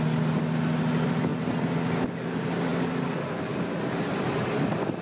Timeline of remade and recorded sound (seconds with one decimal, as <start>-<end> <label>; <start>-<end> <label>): 0.0-5.0 recorded

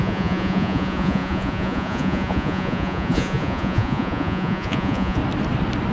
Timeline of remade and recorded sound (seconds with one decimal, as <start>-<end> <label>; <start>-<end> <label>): 0.0-5.2 remade; 5.2-5.9 recorded

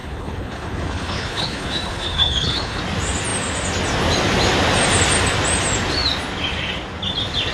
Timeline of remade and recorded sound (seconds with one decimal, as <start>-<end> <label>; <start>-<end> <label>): 0.0-2.8 remade; 2.8-7.5 recorded

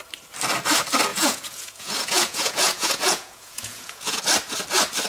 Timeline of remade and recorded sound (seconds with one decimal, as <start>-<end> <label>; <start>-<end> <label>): 0.0-1.1 recorded; 1.1-4.2 remade; 4.2-5.1 recorded

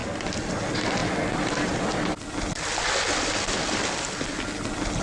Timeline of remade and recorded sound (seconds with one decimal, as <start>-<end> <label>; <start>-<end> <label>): 0.0-5.0 recorded

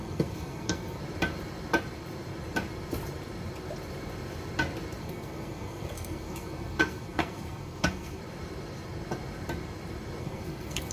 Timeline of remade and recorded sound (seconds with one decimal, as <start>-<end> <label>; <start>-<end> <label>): 0.0-1.0 remade; 1.0-5.0 recorded; 5.0-8.2 remade; 8.2-10.2 recorded; 10.2-10.9 remade